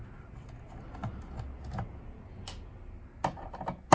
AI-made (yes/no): no